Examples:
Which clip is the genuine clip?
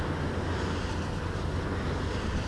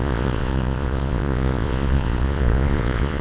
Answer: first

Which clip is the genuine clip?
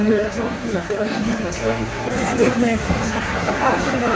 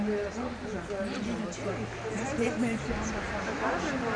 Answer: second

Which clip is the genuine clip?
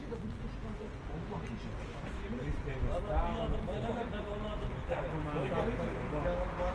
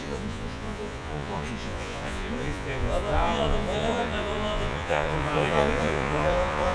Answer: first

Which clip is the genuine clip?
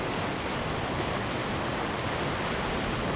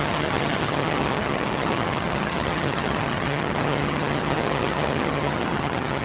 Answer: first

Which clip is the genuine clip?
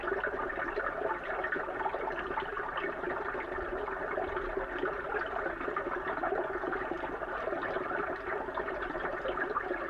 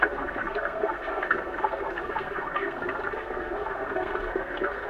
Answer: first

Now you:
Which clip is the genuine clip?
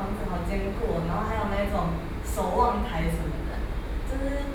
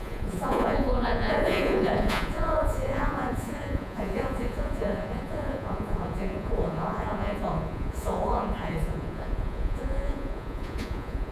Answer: first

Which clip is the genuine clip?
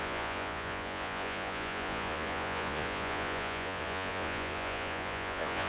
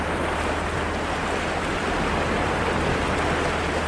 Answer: second